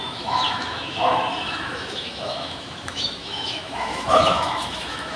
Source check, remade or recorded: remade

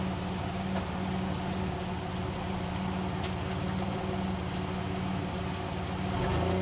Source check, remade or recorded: recorded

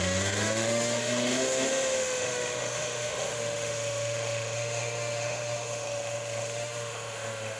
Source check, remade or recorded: remade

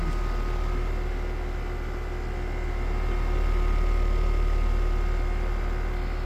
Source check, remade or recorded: recorded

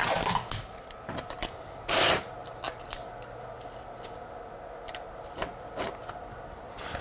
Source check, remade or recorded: recorded